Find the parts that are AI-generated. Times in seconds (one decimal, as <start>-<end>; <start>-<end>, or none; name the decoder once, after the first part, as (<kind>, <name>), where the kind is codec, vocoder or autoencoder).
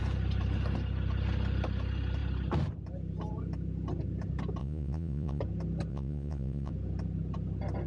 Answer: 4.6-5.4 (vocoder, Vocos); 5.9-6.7